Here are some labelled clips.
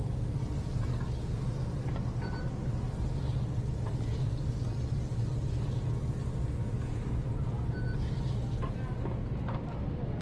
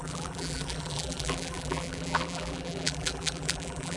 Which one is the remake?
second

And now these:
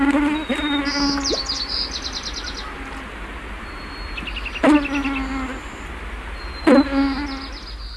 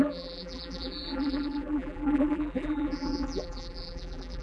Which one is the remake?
second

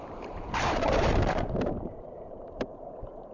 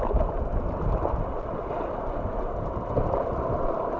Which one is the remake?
first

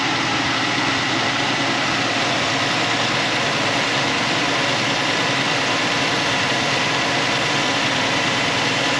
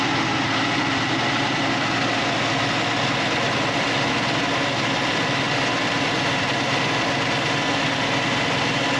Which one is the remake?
first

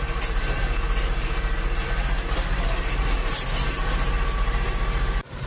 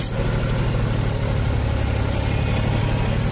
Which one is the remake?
first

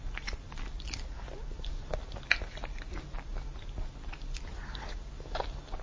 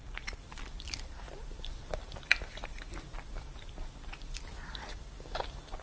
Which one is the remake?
second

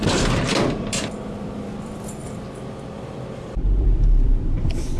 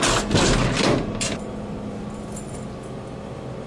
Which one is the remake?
first